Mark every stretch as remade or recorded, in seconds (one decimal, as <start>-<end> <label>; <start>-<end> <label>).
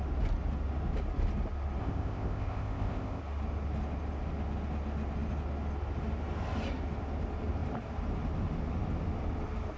0.0-1.8 recorded; 1.8-3.2 remade; 3.2-9.8 recorded